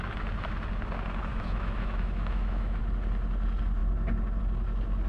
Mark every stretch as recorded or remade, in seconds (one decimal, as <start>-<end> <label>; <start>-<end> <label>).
0.0-1.3 recorded; 1.3-2.8 remade; 2.8-5.1 recorded